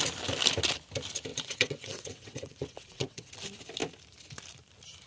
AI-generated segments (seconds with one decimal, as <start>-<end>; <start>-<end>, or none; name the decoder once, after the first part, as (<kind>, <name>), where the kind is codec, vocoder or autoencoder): 1.3-3.3 (vocoder, WaveNeXt)